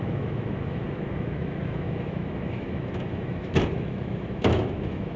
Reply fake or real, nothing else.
fake